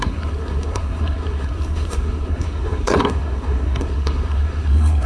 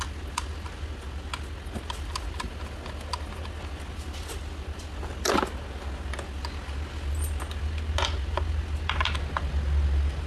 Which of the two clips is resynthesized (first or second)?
first